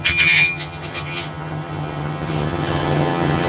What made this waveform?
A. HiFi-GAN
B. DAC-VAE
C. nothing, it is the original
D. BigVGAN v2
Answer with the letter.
A